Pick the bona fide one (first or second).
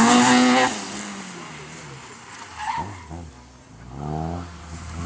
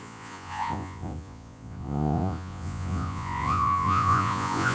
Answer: first